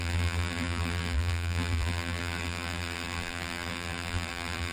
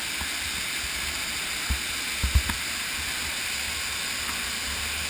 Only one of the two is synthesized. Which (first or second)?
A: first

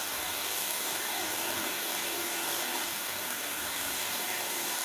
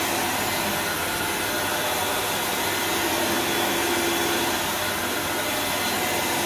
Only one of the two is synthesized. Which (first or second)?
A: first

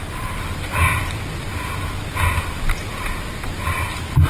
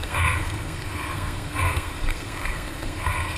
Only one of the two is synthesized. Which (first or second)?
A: second